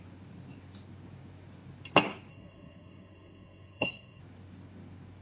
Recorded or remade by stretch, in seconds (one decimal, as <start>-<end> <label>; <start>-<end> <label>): 0.0-2.3 recorded; 2.3-4.2 remade; 4.2-5.2 recorded